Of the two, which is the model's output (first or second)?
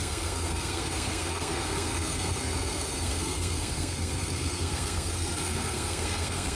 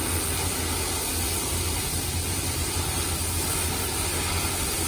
first